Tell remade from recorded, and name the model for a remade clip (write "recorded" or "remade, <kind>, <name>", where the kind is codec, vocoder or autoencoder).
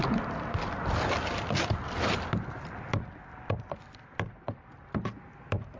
recorded